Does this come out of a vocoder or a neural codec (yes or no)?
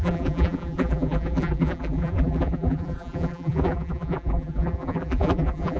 yes